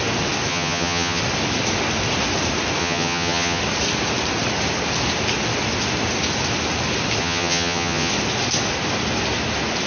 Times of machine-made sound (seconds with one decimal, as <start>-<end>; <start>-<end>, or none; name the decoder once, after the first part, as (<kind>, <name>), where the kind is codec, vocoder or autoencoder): 0.5-1.2 (vocoder, HiFi-GAN); 2.8-3.6; 7.2-8.1